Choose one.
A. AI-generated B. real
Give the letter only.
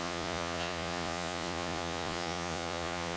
A